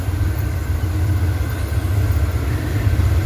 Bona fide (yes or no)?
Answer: yes